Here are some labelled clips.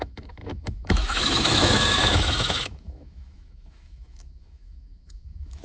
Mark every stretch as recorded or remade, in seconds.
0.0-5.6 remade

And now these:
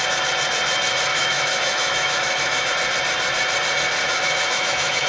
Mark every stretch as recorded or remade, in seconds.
0.0-1.1 recorded; 1.1-2.7 remade; 2.7-4.0 recorded; 4.0-5.1 remade

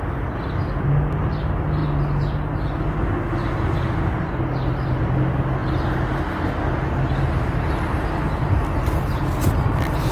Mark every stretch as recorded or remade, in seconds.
0.0-10.1 recorded

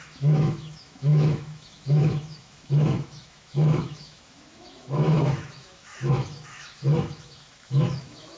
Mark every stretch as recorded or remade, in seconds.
0.0-8.4 remade

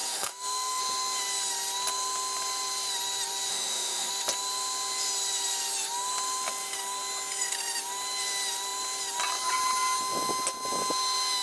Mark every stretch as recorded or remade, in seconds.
0.0-0.8 remade; 0.8-3.5 recorded; 3.5-4.1 remade; 4.1-11.4 recorded